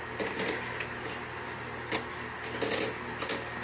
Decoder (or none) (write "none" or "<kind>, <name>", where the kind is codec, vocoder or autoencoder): none